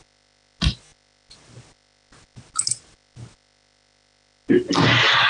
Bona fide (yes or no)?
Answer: yes